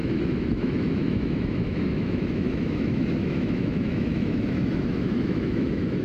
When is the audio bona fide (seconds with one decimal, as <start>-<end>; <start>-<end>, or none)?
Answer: none